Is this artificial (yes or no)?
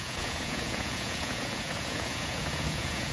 yes